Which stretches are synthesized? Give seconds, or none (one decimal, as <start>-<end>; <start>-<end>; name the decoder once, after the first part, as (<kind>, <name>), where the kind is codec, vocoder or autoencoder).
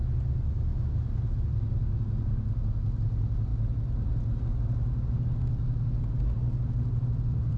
3.5-4.2 (vocoder, BigVGAN v2)